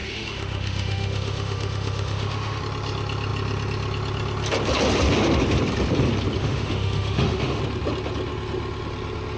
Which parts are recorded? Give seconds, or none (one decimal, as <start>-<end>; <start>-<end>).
2.6-6.4; 7.6-9.4